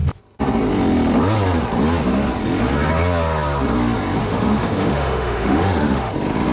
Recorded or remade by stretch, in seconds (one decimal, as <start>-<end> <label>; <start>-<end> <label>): 0.0-4.2 recorded; 4.2-6.1 remade; 6.1-6.5 recorded